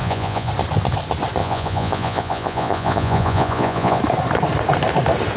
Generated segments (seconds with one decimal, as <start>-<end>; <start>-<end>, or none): 0.0-0.5; 1.4-4.0

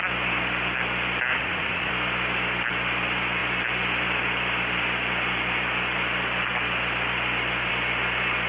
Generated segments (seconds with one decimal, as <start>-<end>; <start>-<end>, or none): 1.3-1.9

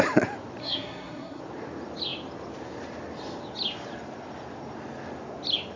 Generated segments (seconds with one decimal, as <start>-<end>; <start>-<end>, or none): 0.6-1.4

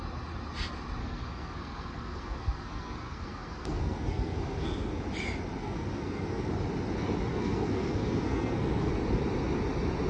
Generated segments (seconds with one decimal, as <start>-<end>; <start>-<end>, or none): 1.0-5.0; 5.6-6.5; 7.3-8.9

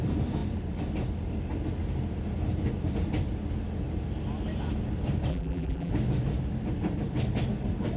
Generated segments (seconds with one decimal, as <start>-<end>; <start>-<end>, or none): 5.3-5.9